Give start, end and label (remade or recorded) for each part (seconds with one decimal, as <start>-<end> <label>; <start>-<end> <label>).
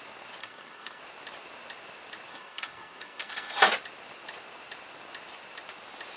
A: 0.0-0.4 recorded; 0.4-1.0 remade; 1.0-2.3 recorded; 2.3-3.6 remade; 3.6-6.2 recorded